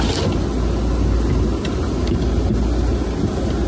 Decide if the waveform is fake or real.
real